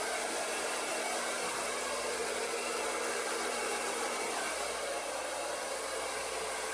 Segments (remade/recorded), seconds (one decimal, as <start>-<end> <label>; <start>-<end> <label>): 0.0-0.9 remade; 0.9-1.5 recorded; 1.5-2.2 remade; 2.2-3.5 recorded; 3.5-5.2 remade; 5.2-6.1 recorded; 6.1-6.7 remade